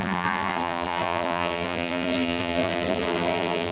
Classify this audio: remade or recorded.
remade